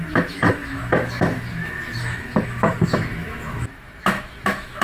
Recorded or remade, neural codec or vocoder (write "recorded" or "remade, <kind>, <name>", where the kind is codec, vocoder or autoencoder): remade, autoencoder, DAC-VAE